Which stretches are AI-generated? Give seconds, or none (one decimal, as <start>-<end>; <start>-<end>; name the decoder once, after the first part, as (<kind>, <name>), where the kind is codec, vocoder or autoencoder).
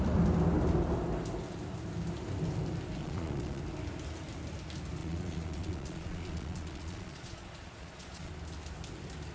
3.0-3.6 (vocoder, Vocos); 5.0-8.3